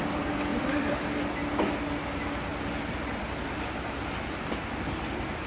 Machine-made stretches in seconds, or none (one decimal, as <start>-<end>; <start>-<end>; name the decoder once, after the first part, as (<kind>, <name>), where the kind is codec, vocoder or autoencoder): none

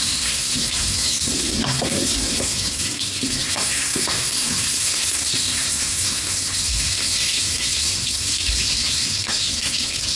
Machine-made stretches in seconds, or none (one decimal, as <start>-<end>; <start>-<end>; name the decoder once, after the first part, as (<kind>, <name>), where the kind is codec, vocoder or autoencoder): 0.0-10.2 (codec, SNAC)

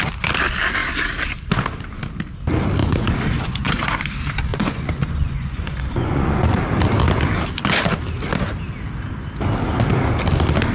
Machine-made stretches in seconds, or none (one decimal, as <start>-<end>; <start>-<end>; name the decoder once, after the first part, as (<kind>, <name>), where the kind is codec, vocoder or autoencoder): 2.8-3.9 (vocoder, Vocos); 4.5-6.6

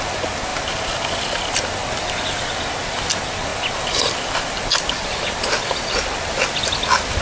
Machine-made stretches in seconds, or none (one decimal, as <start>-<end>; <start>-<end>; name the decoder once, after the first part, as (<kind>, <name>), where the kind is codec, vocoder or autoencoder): none

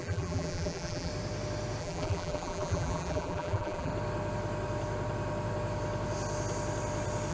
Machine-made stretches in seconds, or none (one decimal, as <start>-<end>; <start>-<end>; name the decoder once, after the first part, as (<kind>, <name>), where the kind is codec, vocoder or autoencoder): 0.0-1.1 (vocoder, BigVGAN v2); 1.8-3.9

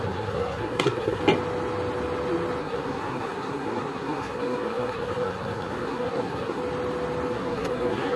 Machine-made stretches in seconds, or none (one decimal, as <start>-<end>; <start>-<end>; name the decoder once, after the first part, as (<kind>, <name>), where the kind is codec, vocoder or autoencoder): 0.0-1.2 (codec, SNAC); 2.6-6.6; 7.3-8.2

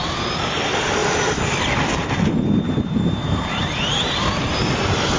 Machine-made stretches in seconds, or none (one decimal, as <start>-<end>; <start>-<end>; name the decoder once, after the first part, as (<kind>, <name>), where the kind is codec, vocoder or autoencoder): 0.0-5.2 (vocoder, BigVGAN v2)